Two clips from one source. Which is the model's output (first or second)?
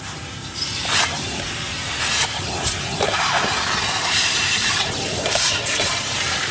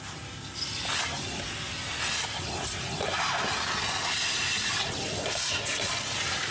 first